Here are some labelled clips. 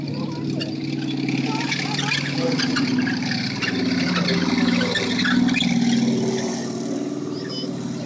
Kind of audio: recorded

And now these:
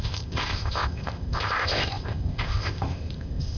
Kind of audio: remade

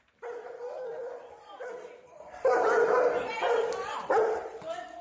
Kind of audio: remade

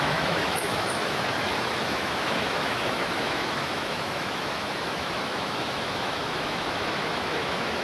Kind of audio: remade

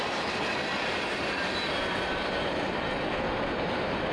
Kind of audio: recorded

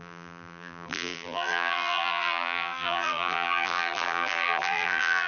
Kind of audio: remade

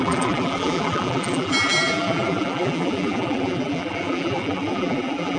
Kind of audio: remade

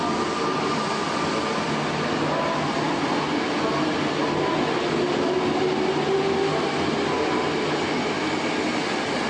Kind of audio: recorded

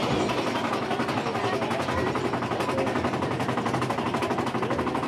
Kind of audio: recorded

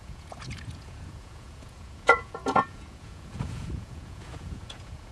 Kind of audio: remade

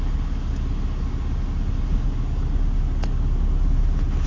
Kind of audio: recorded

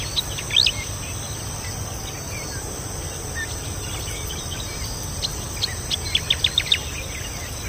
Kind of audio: recorded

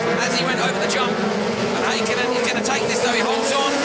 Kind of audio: remade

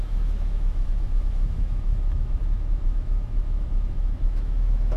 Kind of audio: remade